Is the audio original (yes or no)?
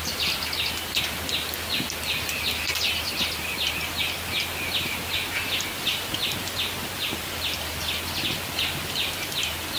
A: yes